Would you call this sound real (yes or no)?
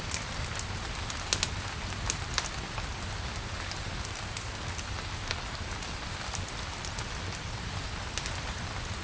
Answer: yes